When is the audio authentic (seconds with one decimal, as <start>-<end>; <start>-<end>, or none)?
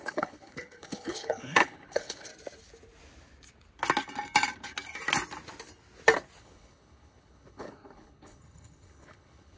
2.3-6.4